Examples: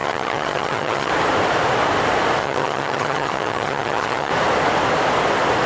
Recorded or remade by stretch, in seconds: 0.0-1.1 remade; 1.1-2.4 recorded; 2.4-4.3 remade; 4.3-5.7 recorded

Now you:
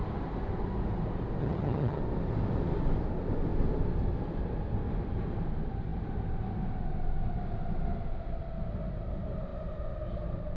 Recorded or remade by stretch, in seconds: 0.0-1.4 recorded; 1.4-2.0 remade; 2.0-10.6 recorded

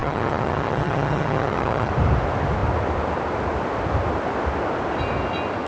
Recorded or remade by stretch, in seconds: 0.0-1.9 remade; 1.9-5.7 recorded

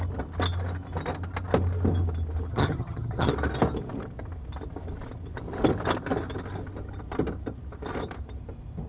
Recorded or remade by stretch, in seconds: 0.0-2.5 recorded; 2.5-3.3 remade; 3.3-8.9 recorded

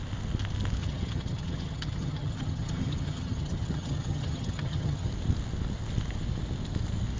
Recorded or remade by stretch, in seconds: 0.0-0.8 recorded; 0.8-5.1 remade; 5.1-7.2 recorded

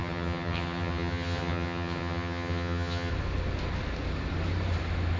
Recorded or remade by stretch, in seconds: 0.0-3.1 remade; 3.1-5.2 recorded

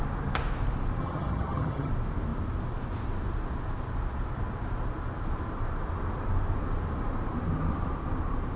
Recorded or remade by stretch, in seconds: 0.0-1.0 recorded; 1.0-1.9 remade; 1.9-8.6 recorded

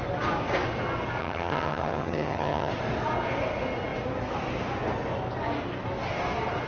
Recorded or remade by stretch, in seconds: 0.0-1.2 recorded; 1.2-2.7 remade; 2.7-6.7 recorded